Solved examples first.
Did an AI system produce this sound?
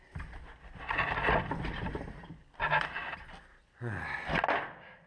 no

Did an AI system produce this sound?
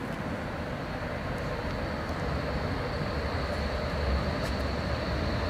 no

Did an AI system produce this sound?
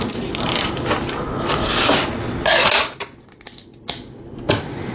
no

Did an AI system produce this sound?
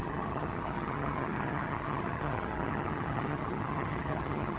yes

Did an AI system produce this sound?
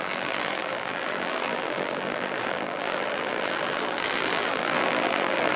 yes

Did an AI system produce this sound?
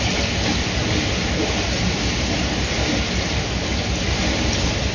no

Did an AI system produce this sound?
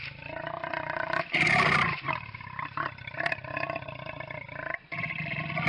no